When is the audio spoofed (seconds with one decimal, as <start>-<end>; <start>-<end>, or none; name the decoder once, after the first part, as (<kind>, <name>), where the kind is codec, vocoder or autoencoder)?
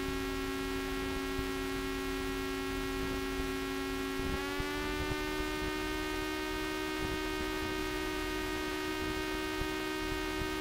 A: 7.8-8.9 (vocoder, Vocos)